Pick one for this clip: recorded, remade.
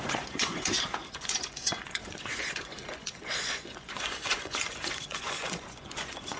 remade